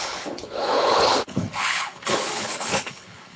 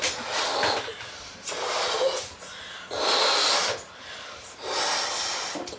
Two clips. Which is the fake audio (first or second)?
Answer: first